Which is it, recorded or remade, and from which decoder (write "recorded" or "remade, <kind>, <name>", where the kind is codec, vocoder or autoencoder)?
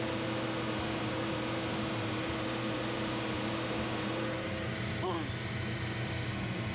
recorded